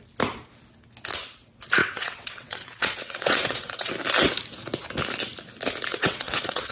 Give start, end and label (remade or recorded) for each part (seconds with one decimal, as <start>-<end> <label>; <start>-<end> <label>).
0.0-1.8 recorded; 1.8-3.9 remade; 3.9-5.9 recorded; 5.9-6.7 remade

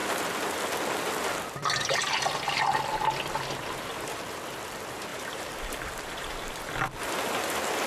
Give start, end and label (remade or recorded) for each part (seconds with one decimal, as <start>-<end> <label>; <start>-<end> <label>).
0.0-5.1 recorded; 5.1-6.5 remade; 6.5-7.9 recorded

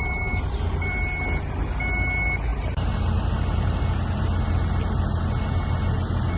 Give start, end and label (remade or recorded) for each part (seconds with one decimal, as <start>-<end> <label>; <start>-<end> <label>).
0.0-6.4 recorded

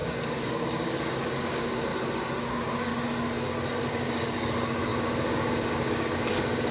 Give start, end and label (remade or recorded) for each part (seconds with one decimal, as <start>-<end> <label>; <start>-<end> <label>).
0.0-1.9 remade; 1.9-2.5 recorded; 2.5-2.9 remade; 2.9-3.9 recorded; 3.9-6.7 remade